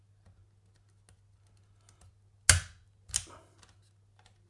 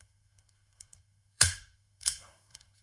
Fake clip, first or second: second